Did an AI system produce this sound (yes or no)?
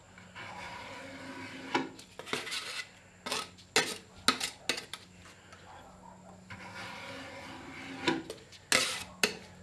no